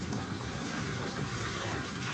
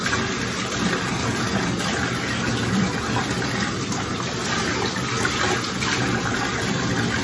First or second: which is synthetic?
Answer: first